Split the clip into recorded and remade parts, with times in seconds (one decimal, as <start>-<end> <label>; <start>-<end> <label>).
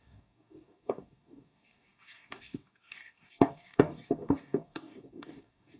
0.0-5.8 remade